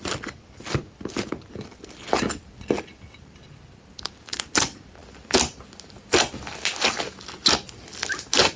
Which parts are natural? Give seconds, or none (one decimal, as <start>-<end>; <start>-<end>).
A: 0.0-8.6